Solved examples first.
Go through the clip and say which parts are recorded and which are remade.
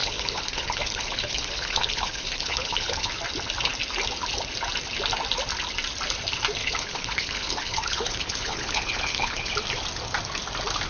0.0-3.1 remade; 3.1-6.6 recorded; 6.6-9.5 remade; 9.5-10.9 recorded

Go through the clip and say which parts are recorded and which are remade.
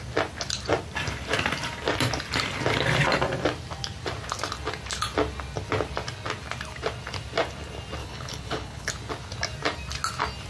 0.0-8.0 recorded; 8.0-8.9 remade; 8.9-10.5 recorded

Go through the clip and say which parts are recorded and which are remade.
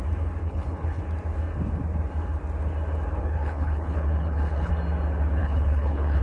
0.0-0.4 recorded; 0.4-1.0 remade; 1.0-3.2 recorded; 3.2-4.7 remade; 4.7-5.4 recorded; 5.4-6.2 remade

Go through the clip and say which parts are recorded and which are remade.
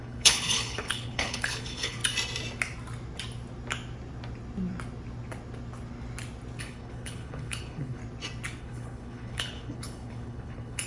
0.0-2.0 remade; 2.0-6.6 recorded; 6.6-8.0 remade; 8.0-8.6 recorded; 8.6-10.9 remade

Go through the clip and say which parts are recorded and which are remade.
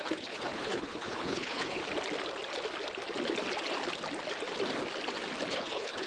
0.0-1.8 remade; 1.8-5.5 recorded; 5.5-6.1 remade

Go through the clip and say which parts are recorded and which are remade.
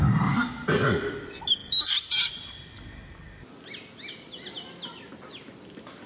0.0-6.1 recorded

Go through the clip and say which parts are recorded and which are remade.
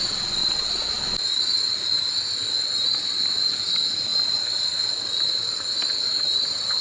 0.0-6.8 recorded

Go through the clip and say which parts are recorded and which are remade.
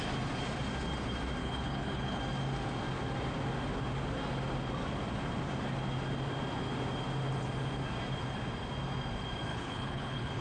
0.0-1.4 recorded; 1.4-2.2 remade; 2.2-9.5 recorded; 9.5-10.4 remade